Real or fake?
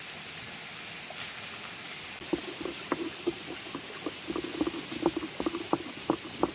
real